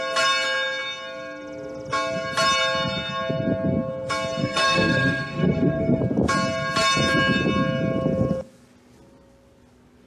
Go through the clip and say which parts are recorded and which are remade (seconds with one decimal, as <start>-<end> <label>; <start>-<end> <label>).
0.0-4.4 recorded; 4.4-6.0 remade; 6.0-10.1 recorded

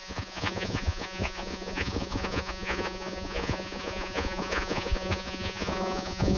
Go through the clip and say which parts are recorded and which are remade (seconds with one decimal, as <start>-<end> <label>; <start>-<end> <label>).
0.0-6.4 remade

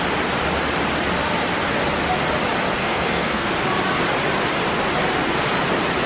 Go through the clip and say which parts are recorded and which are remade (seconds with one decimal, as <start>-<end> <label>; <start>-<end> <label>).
0.0-2.8 recorded; 2.8-3.5 remade; 3.5-6.1 recorded

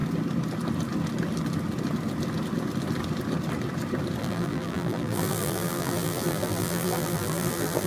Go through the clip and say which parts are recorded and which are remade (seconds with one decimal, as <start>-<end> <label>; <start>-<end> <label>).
0.0-4.2 recorded; 4.2-7.9 remade

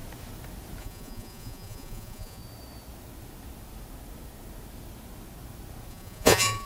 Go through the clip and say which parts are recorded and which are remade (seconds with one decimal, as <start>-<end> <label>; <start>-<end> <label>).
0.0-0.8 recorded; 0.8-2.4 remade; 2.4-5.9 recorded; 5.9-6.7 remade

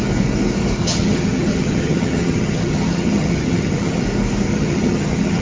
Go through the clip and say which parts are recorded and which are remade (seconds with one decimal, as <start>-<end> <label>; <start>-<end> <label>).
0.0-0.8 recorded; 0.8-4.0 remade; 4.0-4.5 recorded; 4.5-5.4 remade

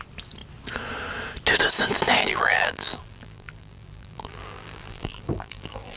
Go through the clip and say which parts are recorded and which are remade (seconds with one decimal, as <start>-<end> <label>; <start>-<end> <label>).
0.0-2.2 recorded; 2.2-6.0 remade